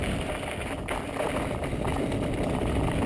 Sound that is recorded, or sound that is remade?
recorded